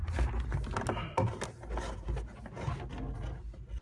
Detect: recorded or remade recorded